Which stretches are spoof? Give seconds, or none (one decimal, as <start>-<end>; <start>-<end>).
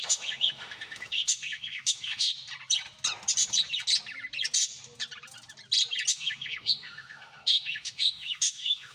0.0-2.3; 6.1-8.9